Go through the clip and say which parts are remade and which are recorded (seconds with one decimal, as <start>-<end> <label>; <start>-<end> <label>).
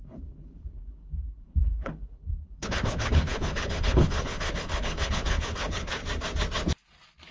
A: 0.0-6.0 remade; 6.0-7.3 recorded